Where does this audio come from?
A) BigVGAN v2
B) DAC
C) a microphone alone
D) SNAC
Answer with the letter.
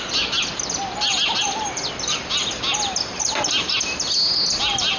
C